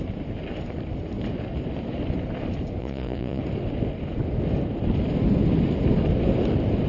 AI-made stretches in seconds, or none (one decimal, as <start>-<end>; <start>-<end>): 2.8-3.4